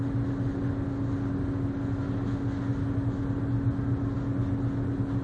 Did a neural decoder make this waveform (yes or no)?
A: no